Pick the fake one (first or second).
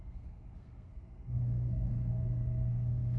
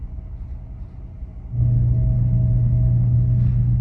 first